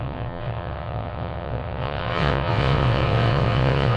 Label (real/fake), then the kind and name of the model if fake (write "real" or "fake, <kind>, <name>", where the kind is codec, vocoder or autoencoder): fake, vocoder, WaveNeXt